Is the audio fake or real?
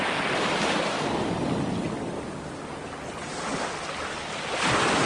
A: real